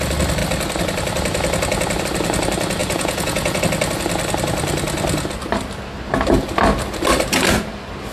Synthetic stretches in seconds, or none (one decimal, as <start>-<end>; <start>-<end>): 2.8-3.6